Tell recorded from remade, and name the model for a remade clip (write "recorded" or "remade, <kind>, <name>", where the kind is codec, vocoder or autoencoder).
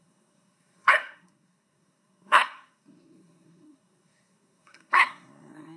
remade, codec, SNAC